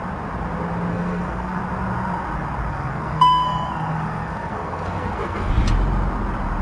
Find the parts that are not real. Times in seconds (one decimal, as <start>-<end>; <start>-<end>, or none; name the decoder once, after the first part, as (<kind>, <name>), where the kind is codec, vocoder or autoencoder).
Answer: 0.9-1.6 (codec, SNAC); 2.7-5.5